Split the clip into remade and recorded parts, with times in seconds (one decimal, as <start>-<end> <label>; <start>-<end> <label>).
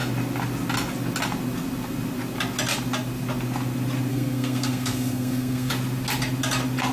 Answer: 0.0-4.1 recorded; 4.1-5.7 remade; 5.7-6.9 recorded